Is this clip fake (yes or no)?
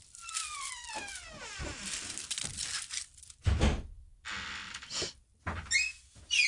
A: no